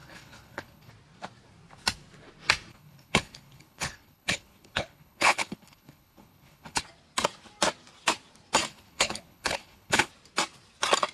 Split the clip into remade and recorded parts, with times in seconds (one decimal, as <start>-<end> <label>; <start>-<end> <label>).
0.0-0.9 remade; 0.9-2.7 recorded; 2.7-6.8 remade; 6.8-8.7 recorded; 8.7-10.1 remade; 10.1-11.1 recorded